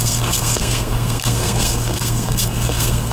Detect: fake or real fake